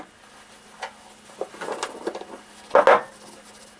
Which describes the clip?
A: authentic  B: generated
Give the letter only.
A